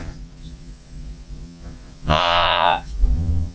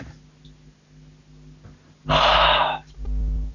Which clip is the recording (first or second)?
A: second